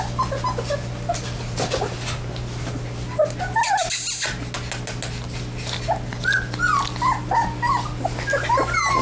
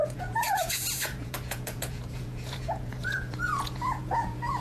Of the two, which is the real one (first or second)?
first